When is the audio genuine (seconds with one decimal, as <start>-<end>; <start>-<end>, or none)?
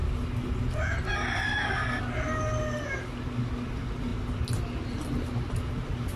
0.0-6.2